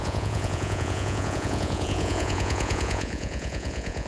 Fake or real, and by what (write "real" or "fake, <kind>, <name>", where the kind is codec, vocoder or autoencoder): fake, vocoder, Vocos